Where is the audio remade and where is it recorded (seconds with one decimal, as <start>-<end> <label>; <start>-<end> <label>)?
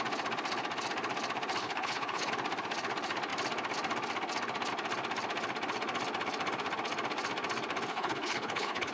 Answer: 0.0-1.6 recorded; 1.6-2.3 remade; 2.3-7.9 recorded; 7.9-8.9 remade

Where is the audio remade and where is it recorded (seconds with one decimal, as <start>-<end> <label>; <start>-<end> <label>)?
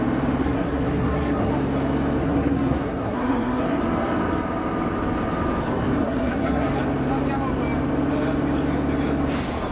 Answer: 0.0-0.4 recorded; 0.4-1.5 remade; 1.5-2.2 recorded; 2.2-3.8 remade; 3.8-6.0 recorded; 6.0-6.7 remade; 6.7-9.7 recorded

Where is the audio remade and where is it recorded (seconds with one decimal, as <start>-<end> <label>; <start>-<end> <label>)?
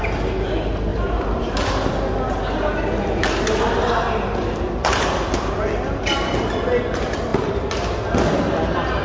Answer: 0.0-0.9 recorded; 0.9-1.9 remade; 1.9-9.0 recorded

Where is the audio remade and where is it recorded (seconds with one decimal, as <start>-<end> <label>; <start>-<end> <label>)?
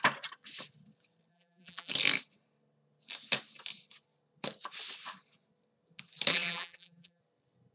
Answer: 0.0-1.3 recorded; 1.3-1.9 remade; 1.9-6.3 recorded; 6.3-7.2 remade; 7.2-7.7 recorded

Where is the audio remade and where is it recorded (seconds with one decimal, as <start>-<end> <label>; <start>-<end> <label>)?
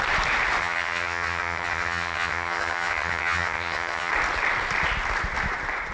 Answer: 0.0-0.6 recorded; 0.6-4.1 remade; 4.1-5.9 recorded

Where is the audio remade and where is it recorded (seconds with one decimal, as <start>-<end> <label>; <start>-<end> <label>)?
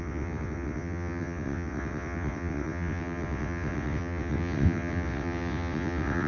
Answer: 0.0-6.3 remade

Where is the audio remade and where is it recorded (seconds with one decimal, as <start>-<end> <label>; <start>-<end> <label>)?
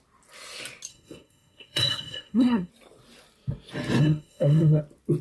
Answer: 0.0-0.9 recorded; 0.9-2.7 remade; 2.7-4.0 recorded; 4.0-4.8 remade; 4.8-5.2 recorded